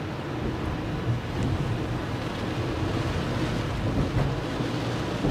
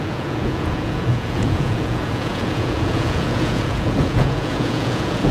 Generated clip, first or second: second